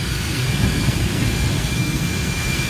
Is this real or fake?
fake